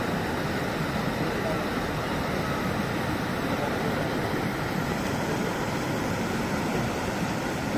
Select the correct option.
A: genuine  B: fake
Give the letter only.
A